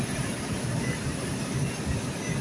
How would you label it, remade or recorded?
recorded